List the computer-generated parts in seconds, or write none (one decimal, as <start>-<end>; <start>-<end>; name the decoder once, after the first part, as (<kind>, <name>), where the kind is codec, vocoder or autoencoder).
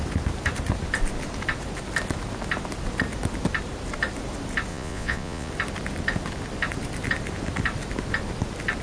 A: 4.7-5.5 (vocoder, Vocos)